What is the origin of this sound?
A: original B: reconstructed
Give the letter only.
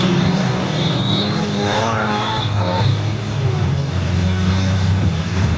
B